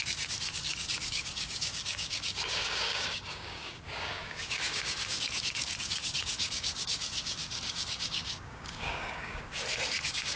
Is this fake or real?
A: fake